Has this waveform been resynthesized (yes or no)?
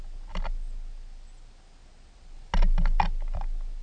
no